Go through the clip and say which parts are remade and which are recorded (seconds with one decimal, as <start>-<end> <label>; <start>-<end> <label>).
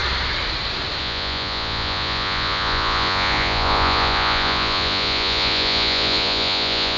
0.0-1.0 recorded; 1.0-7.0 remade